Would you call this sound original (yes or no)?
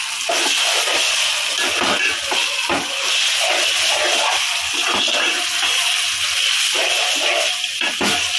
yes